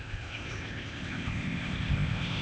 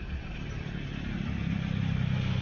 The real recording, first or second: second